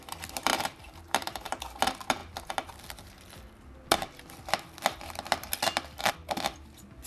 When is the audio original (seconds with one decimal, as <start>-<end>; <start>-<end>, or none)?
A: 0.0-0.5; 1.8-7.1